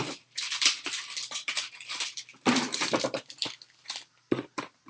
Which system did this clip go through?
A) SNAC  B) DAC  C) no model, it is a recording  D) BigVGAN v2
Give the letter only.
D